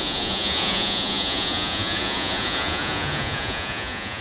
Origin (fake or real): fake